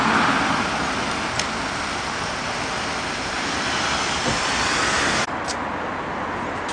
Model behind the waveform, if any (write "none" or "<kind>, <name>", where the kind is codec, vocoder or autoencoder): none